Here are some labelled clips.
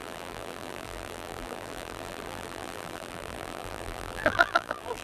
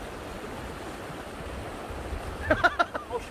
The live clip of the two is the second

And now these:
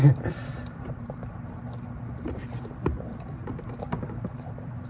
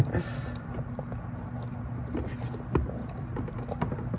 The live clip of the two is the second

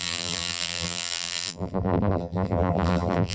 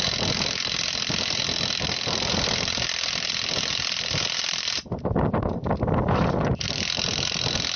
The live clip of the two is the second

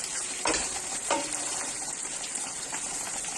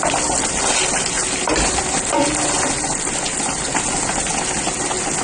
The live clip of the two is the second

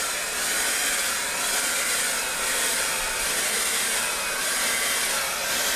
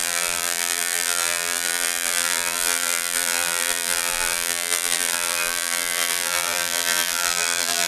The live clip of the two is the first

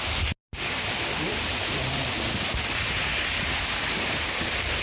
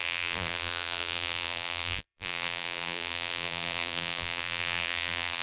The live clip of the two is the first